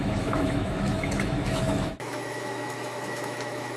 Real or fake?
fake